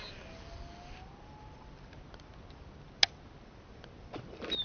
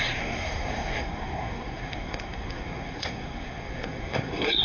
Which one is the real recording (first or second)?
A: first